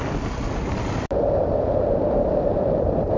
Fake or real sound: real